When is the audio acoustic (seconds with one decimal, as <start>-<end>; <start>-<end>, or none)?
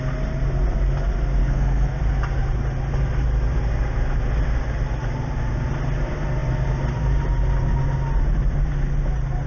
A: 0.0-1.4; 2.0-9.5